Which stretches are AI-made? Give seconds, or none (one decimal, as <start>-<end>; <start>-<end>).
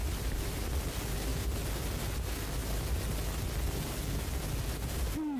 0.0-0.7